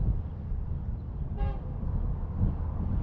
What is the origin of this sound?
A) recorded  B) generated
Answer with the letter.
A